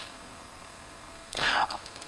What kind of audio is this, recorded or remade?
remade